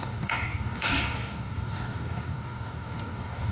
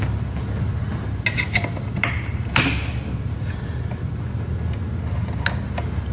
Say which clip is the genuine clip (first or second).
second